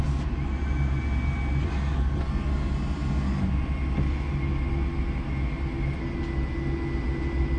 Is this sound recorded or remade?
recorded